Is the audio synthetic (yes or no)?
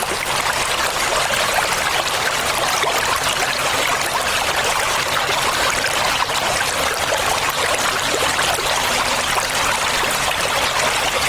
no